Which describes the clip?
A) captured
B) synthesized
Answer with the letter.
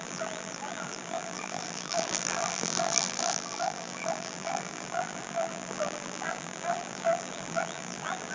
B